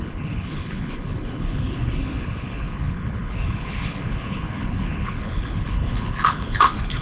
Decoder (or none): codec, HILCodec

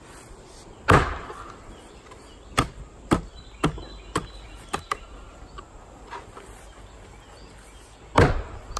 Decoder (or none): none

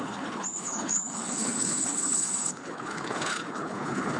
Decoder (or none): codec, HILCodec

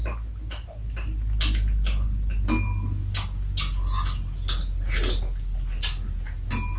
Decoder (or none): none